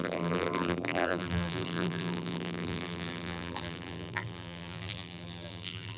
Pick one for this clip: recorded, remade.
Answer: remade